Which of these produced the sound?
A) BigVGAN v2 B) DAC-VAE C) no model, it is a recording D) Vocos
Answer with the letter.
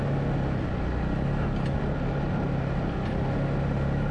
C